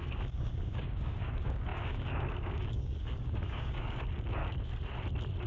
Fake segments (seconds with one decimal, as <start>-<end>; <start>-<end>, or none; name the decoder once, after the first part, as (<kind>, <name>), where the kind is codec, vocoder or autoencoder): 0.0-4.4 (codec, DAC)